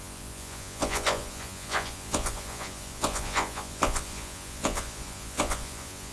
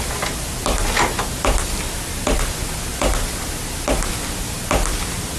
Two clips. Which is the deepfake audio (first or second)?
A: first